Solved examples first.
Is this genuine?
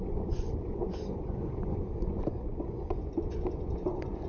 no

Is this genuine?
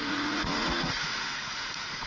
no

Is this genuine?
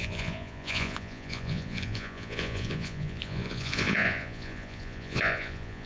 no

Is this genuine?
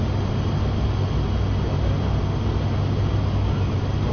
yes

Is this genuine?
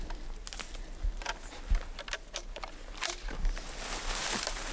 yes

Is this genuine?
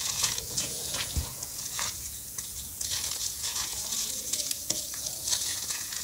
no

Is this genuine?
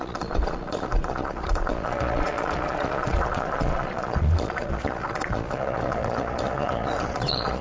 no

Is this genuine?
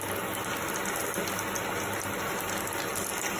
yes